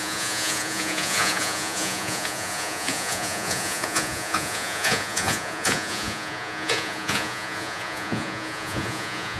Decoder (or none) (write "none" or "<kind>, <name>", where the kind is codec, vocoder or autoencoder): vocoder, Vocos